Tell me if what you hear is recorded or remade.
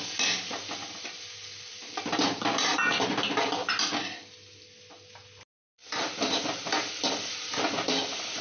recorded